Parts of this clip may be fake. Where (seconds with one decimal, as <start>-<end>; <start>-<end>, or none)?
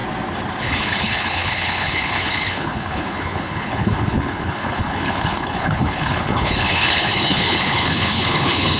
0.6-8.8